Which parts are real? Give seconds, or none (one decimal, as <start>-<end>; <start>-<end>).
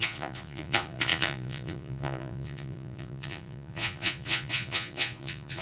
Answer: none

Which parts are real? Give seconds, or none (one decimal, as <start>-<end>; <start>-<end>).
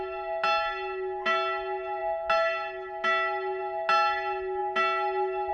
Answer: 0.0-5.5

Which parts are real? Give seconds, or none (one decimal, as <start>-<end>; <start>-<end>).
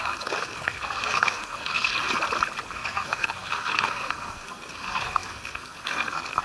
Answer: 1.9-2.7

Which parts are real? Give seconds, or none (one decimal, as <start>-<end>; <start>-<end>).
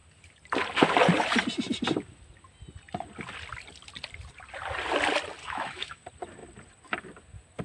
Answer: 0.0-5.4; 6.0-7.6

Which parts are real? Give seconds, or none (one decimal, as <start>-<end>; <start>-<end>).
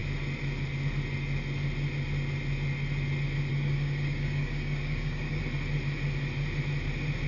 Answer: 0.0-3.5; 5.4-7.3